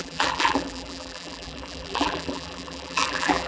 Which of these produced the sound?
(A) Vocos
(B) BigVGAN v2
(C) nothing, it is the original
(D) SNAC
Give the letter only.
B